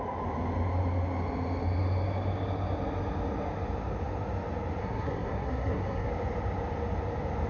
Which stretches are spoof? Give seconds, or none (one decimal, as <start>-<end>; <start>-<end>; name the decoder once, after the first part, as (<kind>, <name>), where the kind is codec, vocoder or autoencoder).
4.8-6.1 (codec, SNAC)